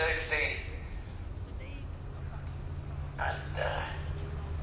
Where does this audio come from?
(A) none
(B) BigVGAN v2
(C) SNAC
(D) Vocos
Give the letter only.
A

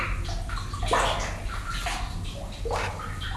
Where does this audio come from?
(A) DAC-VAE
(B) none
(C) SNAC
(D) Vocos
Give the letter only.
B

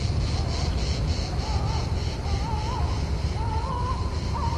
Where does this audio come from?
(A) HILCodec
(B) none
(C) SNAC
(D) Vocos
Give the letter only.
B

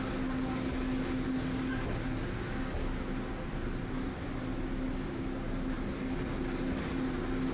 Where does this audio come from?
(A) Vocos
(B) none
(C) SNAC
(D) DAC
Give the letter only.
B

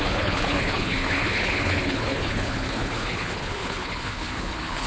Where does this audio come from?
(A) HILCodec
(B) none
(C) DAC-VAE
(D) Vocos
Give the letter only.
A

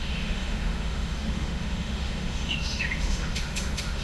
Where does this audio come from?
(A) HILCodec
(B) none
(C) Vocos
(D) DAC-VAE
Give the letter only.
D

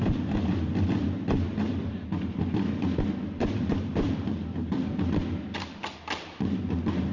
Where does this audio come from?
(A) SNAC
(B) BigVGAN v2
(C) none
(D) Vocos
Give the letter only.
B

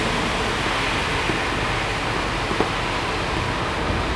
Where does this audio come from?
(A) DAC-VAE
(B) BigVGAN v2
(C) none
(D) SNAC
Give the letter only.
C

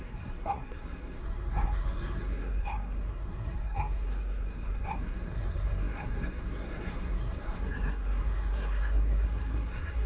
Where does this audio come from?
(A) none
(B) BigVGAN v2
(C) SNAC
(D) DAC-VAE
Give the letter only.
C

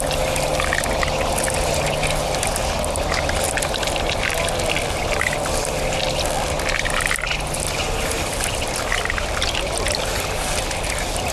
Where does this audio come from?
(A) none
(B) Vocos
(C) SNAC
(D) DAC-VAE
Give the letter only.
A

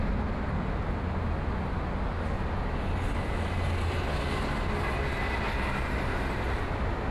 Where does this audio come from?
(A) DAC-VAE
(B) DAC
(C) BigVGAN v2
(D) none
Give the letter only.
D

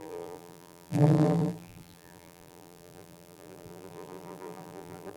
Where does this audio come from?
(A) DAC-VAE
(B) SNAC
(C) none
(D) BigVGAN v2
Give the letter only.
D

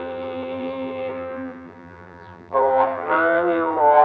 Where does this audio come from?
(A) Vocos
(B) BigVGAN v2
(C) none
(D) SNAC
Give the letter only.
B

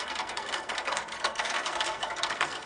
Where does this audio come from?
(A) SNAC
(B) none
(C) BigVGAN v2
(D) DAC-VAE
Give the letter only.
A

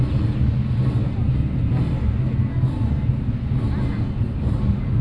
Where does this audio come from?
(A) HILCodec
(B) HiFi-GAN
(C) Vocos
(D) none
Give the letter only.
D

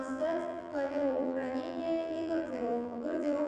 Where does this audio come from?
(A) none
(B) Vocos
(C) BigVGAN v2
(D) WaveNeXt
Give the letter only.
C